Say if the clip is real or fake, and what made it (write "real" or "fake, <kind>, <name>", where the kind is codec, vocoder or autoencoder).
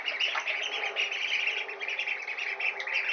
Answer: real